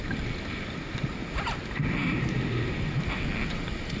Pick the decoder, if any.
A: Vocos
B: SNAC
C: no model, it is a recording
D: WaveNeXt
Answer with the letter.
C